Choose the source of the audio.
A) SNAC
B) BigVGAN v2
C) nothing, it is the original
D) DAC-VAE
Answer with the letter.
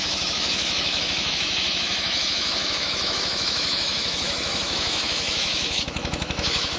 D